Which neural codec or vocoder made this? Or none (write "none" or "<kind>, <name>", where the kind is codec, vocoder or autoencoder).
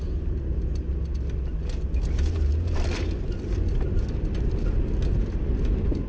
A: none